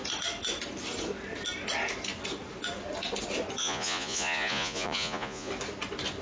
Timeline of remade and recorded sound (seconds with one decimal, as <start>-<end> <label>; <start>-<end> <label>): 0.0-3.6 recorded; 3.6-5.5 remade; 5.5-6.2 recorded